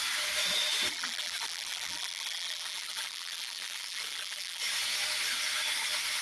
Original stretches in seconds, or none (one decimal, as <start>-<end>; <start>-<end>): 0.0-0.9; 4.6-6.2